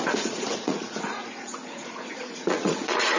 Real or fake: fake